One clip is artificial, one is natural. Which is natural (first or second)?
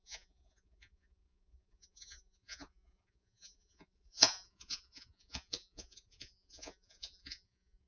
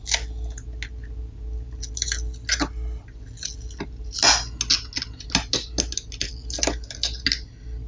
second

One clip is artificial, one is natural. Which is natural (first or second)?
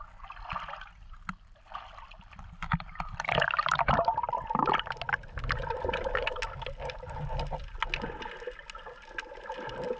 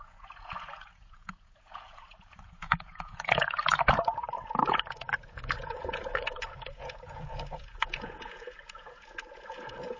first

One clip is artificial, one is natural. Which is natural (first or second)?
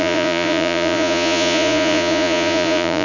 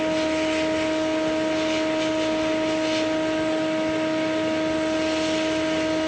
second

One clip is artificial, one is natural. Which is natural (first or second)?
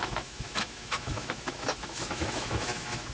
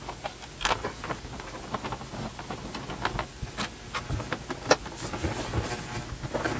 second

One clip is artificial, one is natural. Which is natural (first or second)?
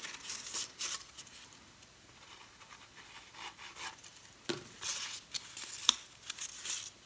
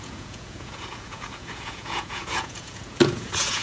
first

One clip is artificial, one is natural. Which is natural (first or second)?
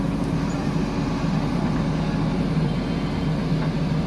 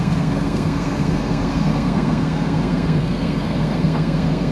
first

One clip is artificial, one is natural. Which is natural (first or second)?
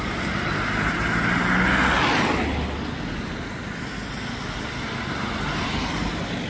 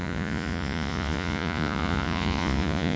first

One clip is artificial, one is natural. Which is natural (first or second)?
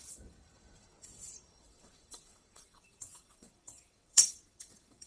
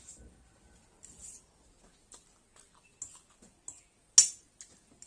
second